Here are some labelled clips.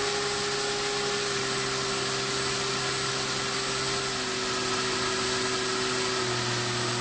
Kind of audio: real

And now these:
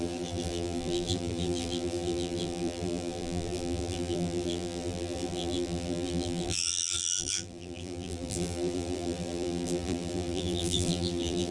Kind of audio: fake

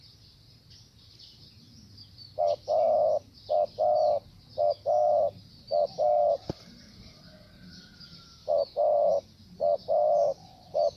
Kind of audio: real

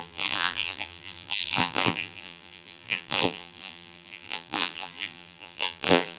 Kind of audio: fake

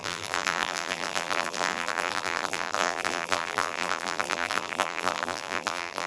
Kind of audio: fake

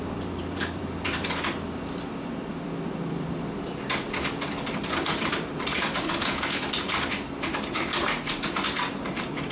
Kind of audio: fake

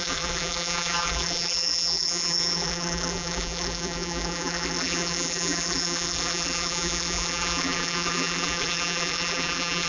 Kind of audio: fake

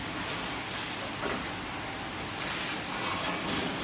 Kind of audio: fake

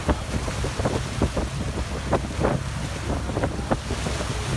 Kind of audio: real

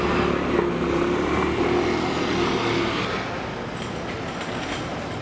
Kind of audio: real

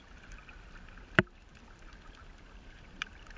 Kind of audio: fake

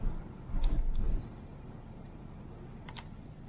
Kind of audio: real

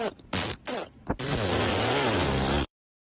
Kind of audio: fake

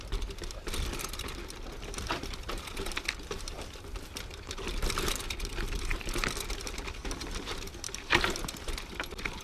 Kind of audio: fake